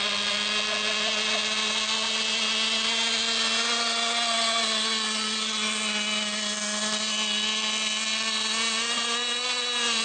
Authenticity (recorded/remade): recorded